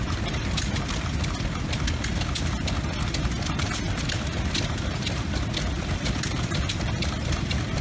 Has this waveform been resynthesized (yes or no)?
no